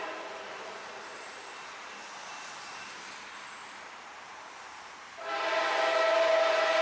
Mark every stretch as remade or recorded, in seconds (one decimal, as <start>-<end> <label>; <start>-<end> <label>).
0.0-6.8 remade